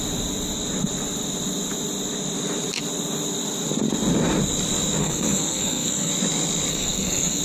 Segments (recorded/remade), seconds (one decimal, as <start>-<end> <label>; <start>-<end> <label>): 0.0-5.0 recorded; 5.0-6.1 remade; 6.1-6.7 recorded; 6.7-7.4 remade